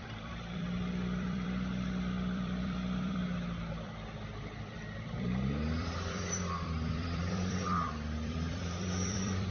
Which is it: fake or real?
fake